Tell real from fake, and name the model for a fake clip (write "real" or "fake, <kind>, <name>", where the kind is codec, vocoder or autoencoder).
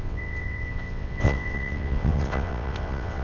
fake, vocoder, WaveNeXt